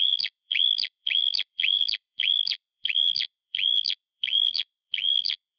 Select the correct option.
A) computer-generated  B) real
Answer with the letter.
A